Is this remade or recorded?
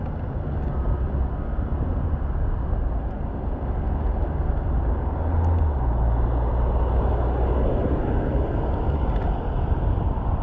recorded